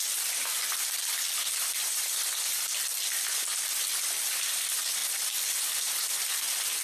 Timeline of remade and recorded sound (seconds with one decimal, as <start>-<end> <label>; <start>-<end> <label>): 0.0-5.0 remade; 5.0-5.6 recorded; 5.6-6.8 remade